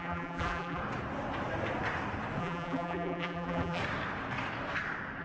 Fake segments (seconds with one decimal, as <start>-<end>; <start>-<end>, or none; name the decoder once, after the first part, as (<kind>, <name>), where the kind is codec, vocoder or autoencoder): 0.0-0.8 (vocoder, BigVGAN v2); 2.4-3.8